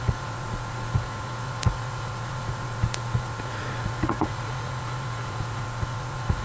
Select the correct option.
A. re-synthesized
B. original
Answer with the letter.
A